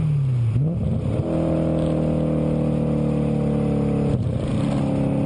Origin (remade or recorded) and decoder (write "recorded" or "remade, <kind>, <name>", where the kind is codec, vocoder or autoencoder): recorded